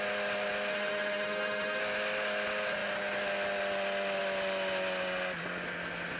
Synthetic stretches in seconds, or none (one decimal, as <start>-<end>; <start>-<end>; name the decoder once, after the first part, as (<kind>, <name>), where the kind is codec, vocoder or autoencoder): 0.7-1.8 (autoencoder, DAC-VAE)